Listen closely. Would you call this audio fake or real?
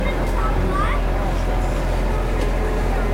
real